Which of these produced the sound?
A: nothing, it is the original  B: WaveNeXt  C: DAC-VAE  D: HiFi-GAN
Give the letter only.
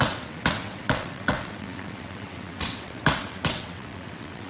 B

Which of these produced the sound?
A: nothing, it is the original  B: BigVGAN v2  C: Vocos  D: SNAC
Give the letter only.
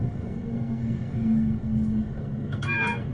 D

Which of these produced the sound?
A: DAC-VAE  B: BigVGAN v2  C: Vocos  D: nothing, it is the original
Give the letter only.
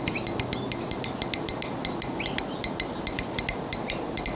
D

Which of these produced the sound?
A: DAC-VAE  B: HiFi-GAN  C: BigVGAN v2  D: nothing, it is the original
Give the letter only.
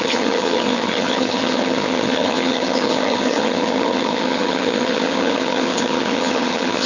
B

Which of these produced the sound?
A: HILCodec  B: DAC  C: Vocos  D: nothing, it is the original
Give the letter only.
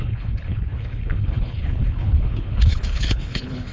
A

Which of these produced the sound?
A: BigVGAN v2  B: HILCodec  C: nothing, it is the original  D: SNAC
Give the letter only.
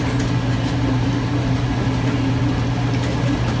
C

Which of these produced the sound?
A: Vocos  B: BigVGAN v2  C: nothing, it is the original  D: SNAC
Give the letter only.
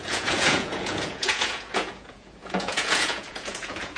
A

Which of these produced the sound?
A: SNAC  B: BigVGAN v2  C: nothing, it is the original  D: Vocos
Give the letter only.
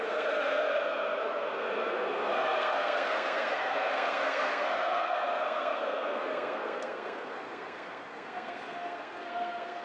A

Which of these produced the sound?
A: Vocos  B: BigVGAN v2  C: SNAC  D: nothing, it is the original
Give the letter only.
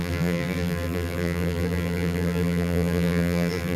B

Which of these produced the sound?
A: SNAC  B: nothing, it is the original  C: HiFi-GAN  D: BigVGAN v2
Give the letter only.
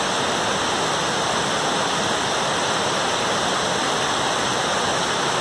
B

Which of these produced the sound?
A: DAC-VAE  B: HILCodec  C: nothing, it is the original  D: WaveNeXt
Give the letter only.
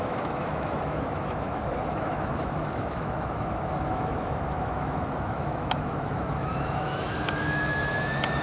A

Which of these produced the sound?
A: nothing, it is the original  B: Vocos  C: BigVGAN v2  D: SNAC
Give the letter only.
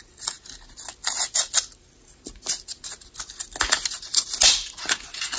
A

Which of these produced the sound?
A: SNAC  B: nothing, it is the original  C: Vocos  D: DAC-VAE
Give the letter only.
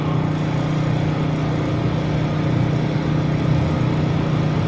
B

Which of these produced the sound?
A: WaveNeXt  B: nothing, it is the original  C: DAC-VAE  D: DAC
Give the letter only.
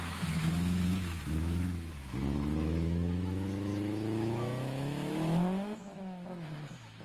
C